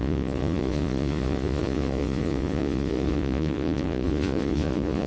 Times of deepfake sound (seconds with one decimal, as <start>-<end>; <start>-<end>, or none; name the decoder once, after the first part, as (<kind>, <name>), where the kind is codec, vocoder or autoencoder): 0.0-5.1 (vocoder, Vocos)